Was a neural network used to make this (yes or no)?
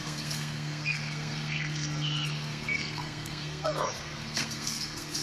yes